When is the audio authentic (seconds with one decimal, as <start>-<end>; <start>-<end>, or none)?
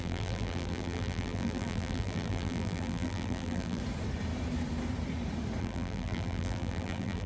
3.8-5.6